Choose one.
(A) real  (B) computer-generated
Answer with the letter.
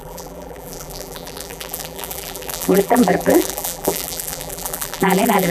B